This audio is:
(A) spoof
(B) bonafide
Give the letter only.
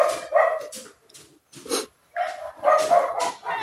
B